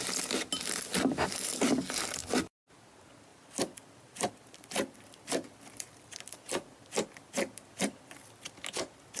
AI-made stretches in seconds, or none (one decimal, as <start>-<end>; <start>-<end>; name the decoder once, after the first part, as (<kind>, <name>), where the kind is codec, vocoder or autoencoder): 0.9-1.6 (vocoder, BigVGAN v2); 2.2-2.7; 3.3-8.5